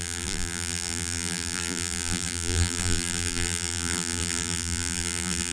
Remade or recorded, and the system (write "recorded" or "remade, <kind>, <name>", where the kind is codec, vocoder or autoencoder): remade, vocoder, BigVGAN v2